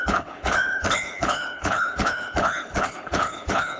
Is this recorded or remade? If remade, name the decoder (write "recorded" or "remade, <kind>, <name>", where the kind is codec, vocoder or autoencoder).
remade, codec, HILCodec